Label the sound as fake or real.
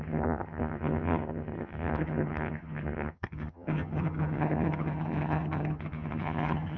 fake